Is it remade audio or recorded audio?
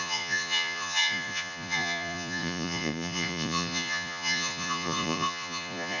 remade